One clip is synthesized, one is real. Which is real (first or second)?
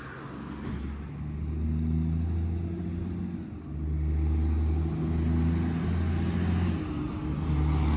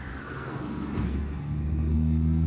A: first